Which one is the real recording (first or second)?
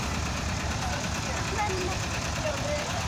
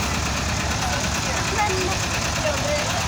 second